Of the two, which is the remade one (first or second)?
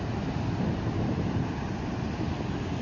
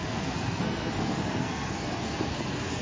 second